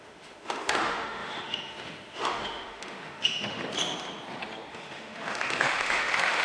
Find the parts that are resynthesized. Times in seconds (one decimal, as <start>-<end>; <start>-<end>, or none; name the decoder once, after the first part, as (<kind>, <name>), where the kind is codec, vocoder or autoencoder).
0.0-3.6 (autoencoder, DAC-VAE); 4.7-6.4